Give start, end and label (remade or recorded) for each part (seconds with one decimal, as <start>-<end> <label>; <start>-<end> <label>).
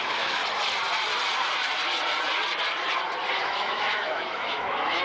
0.0-0.4 remade; 0.4-3.4 recorded; 3.4-5.0 remade